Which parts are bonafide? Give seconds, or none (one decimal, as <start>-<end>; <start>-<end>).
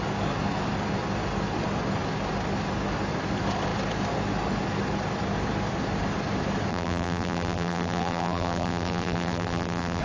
0.0-6.7